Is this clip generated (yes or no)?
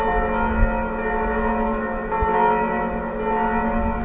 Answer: no